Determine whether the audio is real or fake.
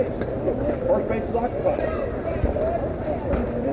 real